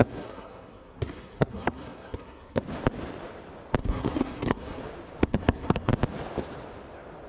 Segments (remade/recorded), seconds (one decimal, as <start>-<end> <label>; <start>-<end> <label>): 0.0-2.6 remade; 2.6-3.8 recorded; 3.8-4.8 remade; 4.8-5.2 recorded; 5.2-5.9 remade; 5.9-7.3 recorded